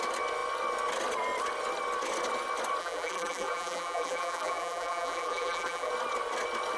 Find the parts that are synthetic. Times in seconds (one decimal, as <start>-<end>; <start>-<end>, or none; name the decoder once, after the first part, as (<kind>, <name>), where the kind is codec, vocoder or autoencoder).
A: 2.8-5.9 (vocoder, BigVGAN v2)